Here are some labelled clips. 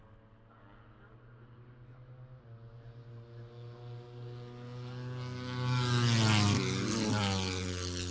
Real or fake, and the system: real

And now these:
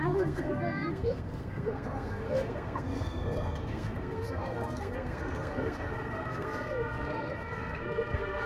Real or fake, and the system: fake, codec, SNAC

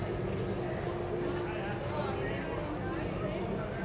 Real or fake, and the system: real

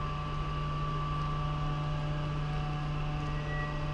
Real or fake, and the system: real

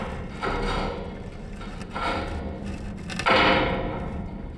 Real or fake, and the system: real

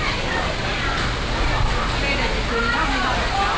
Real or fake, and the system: real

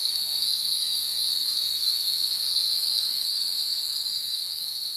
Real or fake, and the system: fake, codec, SNAC